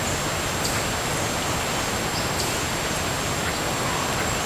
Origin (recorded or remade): recorded